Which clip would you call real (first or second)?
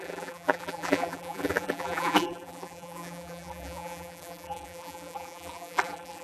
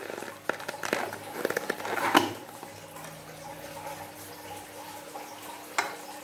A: second